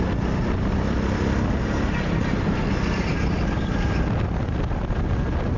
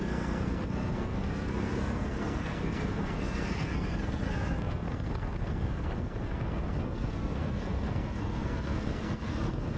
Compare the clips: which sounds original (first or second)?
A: first